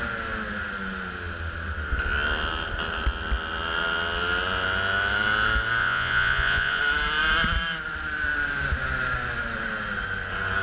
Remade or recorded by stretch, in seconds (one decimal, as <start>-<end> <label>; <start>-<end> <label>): 0.0-5.8 recorded; 5.8-6.8 remade; 6.8-10.6 recorded